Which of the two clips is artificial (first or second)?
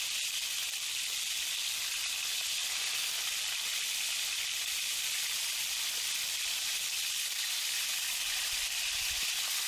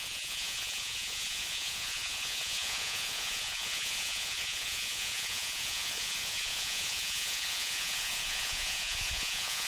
second